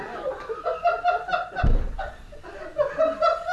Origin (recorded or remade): recorded